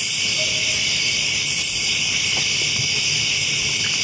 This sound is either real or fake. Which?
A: real